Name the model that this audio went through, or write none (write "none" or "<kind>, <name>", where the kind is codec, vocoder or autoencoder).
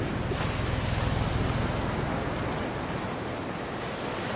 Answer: none